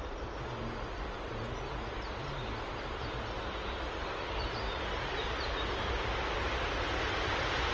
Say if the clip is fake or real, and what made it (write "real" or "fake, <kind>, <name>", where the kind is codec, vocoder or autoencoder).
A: real